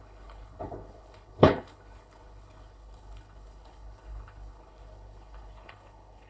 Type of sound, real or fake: fake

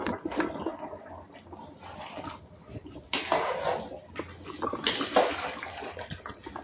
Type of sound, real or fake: real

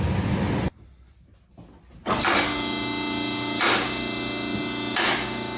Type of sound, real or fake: real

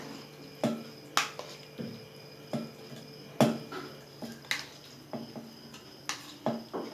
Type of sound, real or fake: real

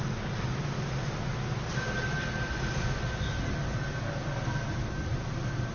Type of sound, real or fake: real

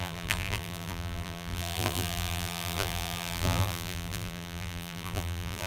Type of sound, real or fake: fake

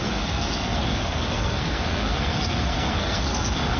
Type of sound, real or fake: fake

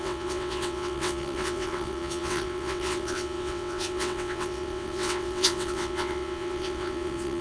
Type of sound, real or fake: fake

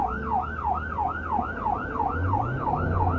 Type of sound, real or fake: real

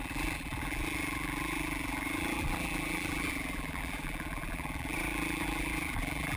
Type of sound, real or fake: fake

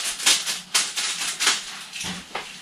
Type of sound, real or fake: real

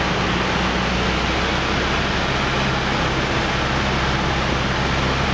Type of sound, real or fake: real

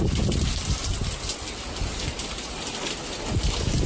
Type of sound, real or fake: real